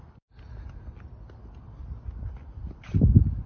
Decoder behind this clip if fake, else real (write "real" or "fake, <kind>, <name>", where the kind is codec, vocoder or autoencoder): real